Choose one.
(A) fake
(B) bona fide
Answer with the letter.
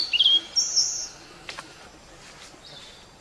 B